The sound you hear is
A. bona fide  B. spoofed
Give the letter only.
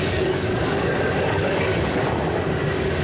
B